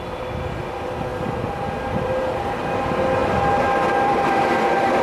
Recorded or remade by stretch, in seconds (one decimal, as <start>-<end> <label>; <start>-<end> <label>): 0.0-3.2 recorded; 3.2-5.0 remade